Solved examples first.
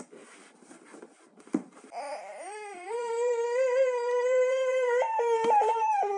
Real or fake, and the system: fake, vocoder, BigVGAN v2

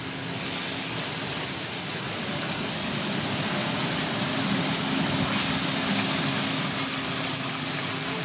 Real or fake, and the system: real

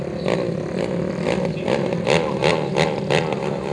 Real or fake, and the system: real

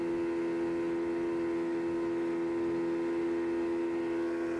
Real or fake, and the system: real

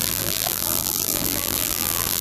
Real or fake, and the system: fake, vocoder, BigVGAN v2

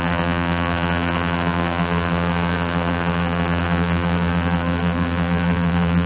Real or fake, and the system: fake, vocoder, BigVGAN v2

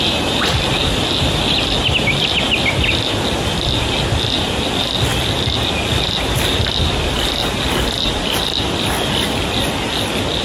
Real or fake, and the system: real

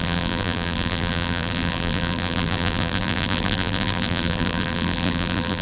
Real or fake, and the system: fake, vocoder, BigVGAN v2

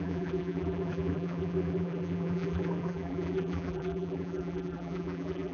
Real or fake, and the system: fake, vocoder, BigVGAN v2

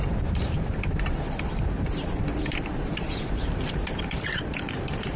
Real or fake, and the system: fake, vocoder, BigVGAN v2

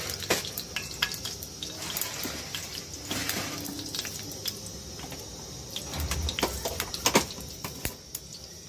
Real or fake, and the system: real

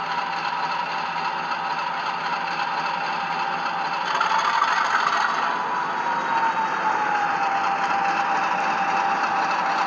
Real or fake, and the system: real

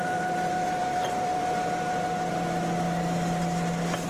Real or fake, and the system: real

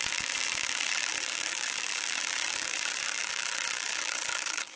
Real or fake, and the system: fake, vocoder, BigVGAN v2